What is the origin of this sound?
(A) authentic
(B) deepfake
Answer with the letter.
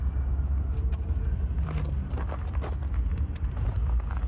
A